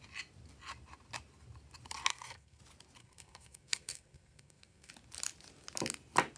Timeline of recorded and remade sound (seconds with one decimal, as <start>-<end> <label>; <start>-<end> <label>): 0.0-2.1 recorded; 2.1-2.6 remade; 2.6-3.0 recorded; 3.0-4.9 remade; 4.9-6.4 recorded